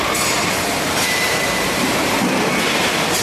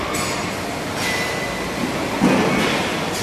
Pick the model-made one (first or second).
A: first